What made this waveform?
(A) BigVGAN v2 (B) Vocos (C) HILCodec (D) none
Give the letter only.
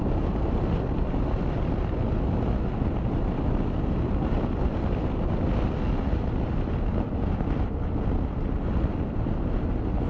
D